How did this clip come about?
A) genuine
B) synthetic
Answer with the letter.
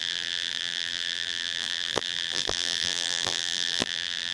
B